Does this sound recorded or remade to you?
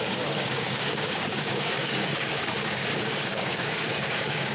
remade